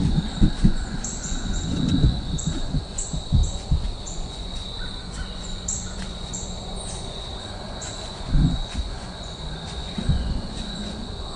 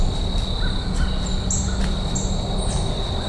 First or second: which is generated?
first